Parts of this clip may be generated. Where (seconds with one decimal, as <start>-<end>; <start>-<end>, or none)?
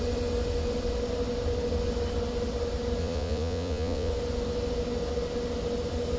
3.0-4.1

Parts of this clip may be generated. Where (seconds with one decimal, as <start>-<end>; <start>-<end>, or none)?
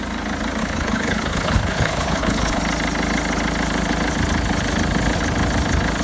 0.6-2.6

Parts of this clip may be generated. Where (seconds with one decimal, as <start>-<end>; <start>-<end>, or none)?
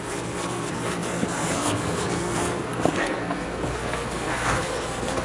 0.0-5.2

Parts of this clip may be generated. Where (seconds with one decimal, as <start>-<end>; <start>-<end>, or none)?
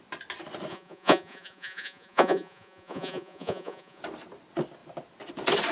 0.7-4.0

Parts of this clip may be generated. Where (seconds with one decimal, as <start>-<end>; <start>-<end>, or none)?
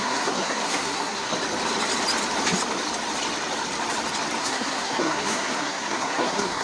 0.0-1.3; 4.4-6.6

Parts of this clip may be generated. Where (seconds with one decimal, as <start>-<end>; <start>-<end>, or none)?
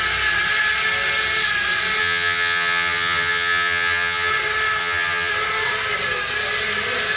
2.0-4.3; 4.8-5.3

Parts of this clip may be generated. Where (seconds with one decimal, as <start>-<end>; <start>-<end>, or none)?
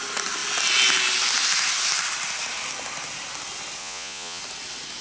3.8-4.4